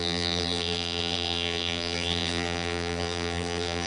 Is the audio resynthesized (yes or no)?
yes